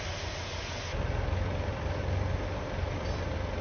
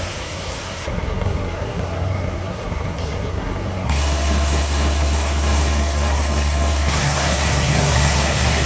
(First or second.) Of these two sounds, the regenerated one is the second